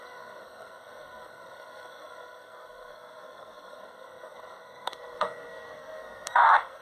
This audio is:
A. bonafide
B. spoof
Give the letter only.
B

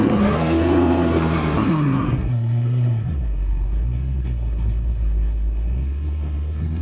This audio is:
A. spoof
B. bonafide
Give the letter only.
A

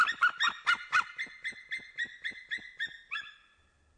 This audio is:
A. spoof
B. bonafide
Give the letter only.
B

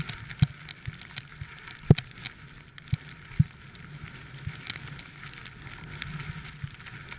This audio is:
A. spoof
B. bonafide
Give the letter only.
B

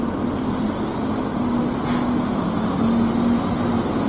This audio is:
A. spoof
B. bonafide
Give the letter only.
B